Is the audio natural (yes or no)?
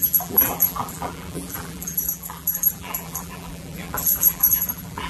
no